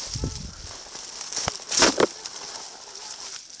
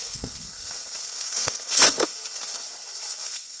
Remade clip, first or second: second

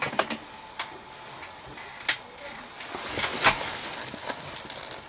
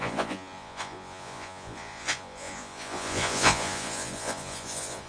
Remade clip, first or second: second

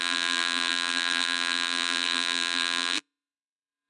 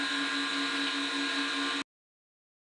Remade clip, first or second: first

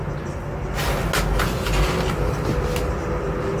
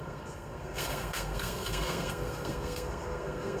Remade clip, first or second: second